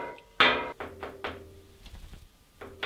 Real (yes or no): yes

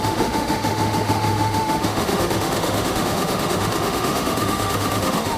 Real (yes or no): no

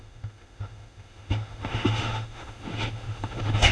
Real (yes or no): no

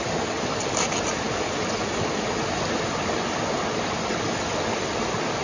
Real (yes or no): yes